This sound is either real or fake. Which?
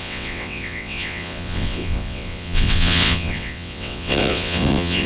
fake